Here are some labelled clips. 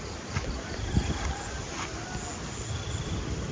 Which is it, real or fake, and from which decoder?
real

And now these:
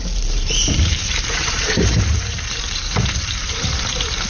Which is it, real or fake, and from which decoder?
fake, vocoder, BigVGAN v2